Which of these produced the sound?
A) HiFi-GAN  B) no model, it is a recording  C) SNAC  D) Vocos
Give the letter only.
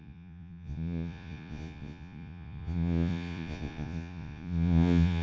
D